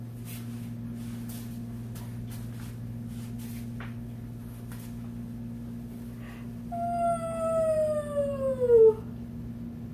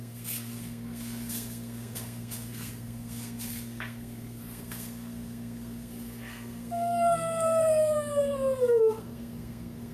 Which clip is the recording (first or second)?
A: first